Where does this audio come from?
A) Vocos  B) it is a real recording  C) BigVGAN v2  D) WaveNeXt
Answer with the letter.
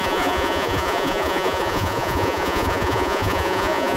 A